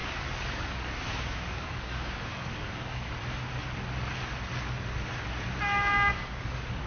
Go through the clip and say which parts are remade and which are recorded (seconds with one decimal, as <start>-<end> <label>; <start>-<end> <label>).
0.0-3.1 remade; 3.1-6.1 recorded; 6.1-6.9 remade